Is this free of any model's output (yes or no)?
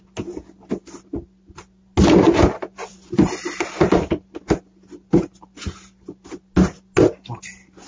yes